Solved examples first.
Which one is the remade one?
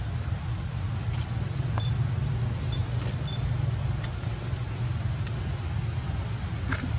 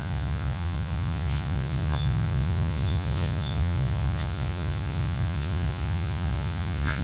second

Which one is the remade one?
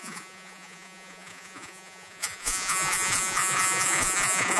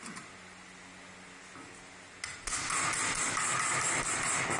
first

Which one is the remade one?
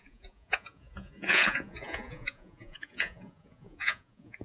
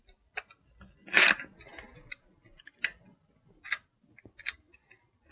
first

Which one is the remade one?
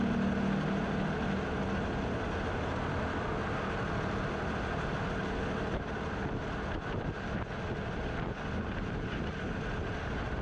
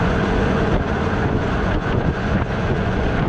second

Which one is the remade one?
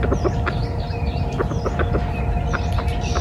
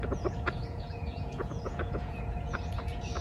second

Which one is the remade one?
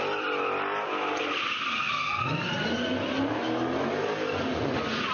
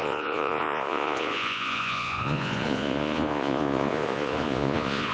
second